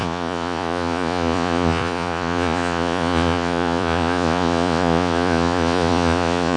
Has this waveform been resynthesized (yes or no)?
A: yes